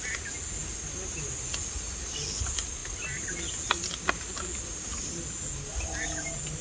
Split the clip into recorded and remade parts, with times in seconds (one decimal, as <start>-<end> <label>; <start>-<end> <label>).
0.0-6.6 recorded